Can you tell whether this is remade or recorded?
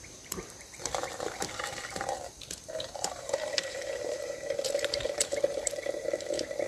remade